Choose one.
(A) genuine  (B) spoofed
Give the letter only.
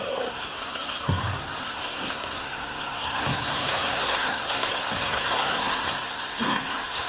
B